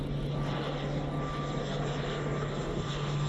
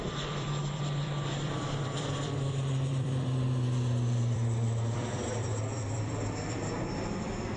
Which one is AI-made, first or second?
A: second